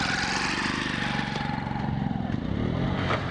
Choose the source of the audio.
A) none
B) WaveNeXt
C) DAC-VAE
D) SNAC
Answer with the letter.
A